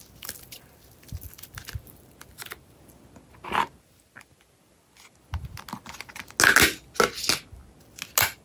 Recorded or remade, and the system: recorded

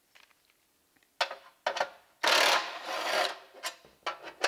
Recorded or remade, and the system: recorded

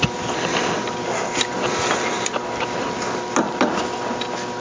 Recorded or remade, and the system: recorded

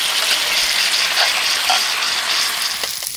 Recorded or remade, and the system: recorded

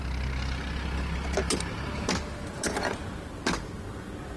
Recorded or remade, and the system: recorded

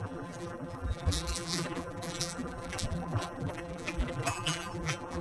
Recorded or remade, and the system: remade, vocoder, BigVGAN v2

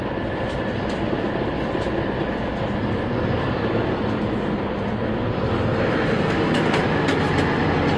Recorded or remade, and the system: recorded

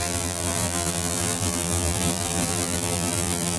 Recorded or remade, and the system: remade, vocoder, BigVGAN v2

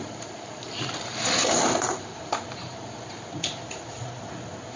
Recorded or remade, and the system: remade, vocoder, BigVGAN v2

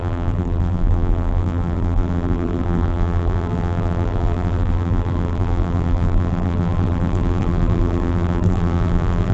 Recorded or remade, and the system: remade, vocoder, BigVGAN v2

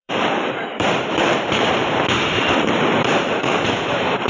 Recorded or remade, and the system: remade, vocoder, BigVGAN v2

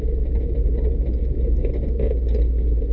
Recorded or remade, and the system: recorded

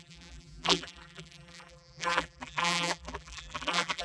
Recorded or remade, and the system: remade, vocoder, BigVGAN v2